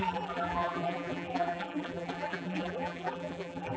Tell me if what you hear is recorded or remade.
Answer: remade